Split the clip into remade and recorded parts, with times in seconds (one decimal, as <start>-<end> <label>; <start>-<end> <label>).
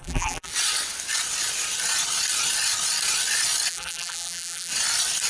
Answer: 0.0-0.5 remade; 0.5-3.7 recorded; 3.7-4.7 remade; 4.7-5.3 recorded